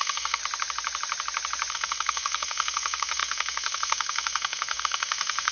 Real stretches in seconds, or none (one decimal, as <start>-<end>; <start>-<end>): 0.4-1.7